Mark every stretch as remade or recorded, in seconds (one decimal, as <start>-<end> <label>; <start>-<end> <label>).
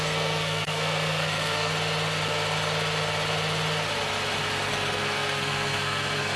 0.0-1.7 remade; 1.7-4.7 recorded; 4.7-6.4 remade